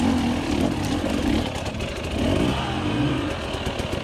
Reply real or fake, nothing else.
real